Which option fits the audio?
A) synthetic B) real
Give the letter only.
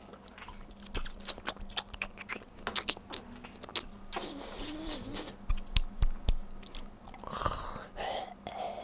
B